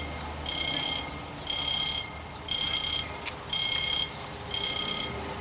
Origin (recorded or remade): recorded